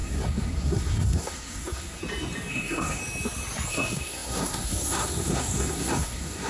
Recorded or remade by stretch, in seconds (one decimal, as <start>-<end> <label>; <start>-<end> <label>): 0.0-2.0 remade; 2.0-2.5 recorded; 2.5-3.0 remade; 3.0-3.7 recorded; 3.7-6.5 remade